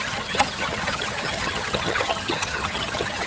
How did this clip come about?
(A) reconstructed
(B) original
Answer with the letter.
A